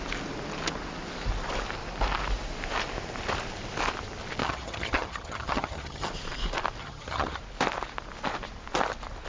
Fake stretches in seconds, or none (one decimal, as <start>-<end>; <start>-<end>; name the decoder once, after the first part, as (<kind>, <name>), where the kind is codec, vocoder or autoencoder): 4.4-6.1 (vocoder, HiFi-GAN); 6.8-7.4